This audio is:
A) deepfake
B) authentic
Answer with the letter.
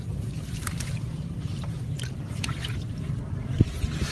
A